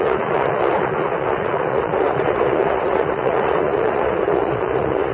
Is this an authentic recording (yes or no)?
no